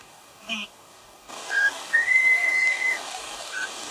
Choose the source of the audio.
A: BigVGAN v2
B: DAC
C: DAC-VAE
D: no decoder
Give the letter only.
B